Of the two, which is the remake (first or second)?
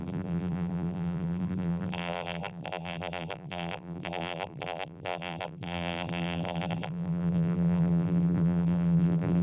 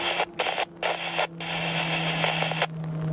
first